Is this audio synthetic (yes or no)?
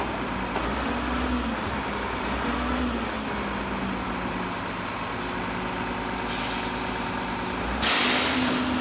no